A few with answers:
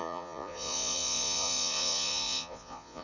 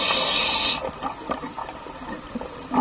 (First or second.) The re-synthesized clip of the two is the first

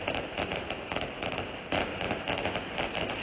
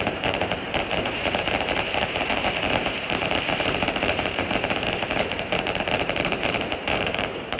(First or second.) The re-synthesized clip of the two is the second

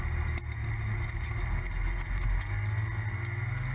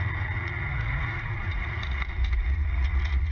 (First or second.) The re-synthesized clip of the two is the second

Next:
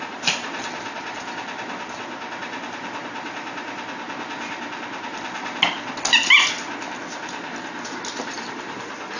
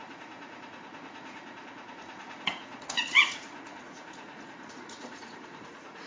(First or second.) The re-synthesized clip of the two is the second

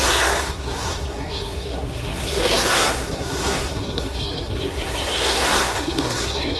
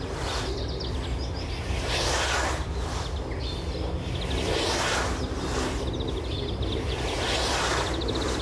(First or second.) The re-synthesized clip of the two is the first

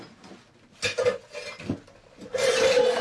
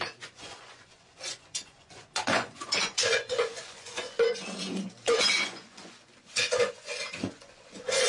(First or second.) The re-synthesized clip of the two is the second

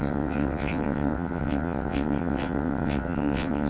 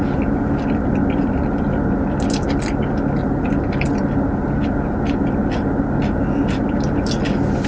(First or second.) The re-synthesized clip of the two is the first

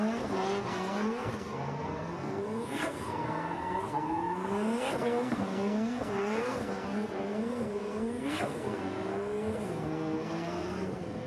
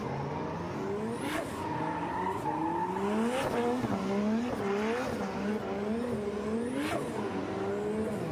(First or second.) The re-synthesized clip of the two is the first